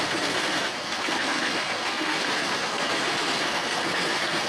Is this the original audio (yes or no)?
no